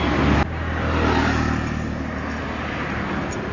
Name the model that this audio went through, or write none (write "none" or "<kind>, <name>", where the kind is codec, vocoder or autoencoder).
none